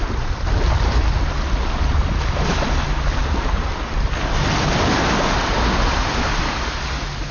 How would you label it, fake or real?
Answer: real